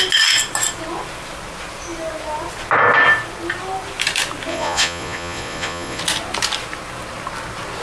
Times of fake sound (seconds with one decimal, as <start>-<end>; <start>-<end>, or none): 4.5-6.0